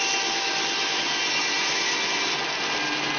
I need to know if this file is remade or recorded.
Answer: recorded